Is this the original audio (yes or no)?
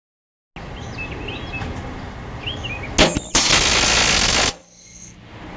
yes